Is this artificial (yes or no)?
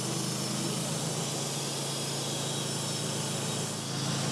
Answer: no